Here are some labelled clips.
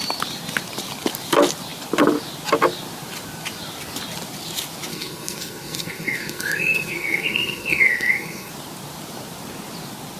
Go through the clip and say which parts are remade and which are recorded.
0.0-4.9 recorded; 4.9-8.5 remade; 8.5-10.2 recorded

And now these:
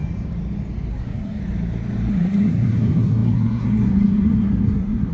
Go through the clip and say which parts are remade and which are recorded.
0.0-0.9 recorded; 0.9-1.4 remade; 1.4-2.1 recorded; 2.1-5.1 remade

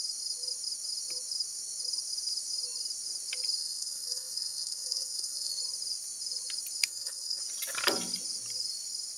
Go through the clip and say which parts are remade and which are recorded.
0.0-3.6 recorded; 3.6-5.6 remade; 5.6-6.8 recorded; 6.8-7.4 remade; 7.4-9.2 recorded

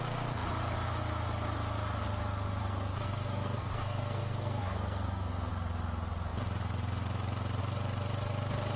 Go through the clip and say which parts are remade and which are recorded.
0.0-2.6 recorded; 2.6-5.5 remade; 5.5-8.8 recorded

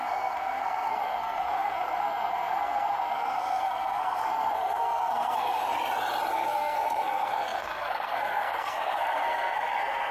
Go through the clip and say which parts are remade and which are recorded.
0.0-5.6 remade; 5.6-6.3 recorded; 6.3-10.1 remade